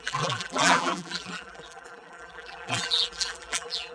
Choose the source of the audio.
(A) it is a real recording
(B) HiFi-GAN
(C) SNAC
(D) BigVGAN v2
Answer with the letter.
D